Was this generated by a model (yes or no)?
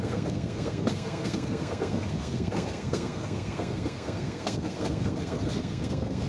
yes